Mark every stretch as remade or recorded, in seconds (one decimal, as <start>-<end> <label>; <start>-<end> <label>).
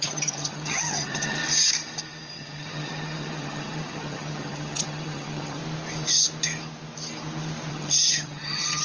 0.0-1.4 remade; 1.4-2.3 recorded; 2.3-5.6 remade; 5.6-7.7 recorded; 7.7-8.8 remade